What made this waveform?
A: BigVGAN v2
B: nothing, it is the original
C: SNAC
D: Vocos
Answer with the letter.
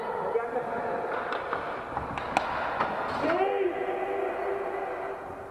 B